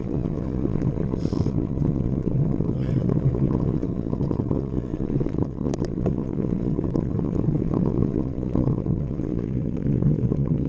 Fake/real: fake